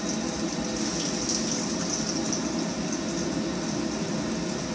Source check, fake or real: real